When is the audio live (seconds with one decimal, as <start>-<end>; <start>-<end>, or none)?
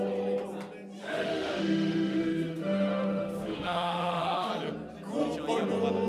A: 0.0-1.0; 4.5-6.1